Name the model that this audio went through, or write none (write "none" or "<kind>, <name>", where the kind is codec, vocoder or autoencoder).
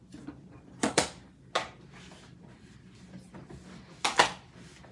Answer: none